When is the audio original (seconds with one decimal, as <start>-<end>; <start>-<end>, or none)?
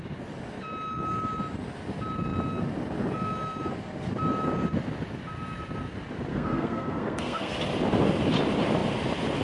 0.0-6.3; 7.5-9.4